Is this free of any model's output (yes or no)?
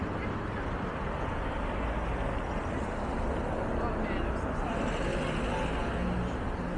yes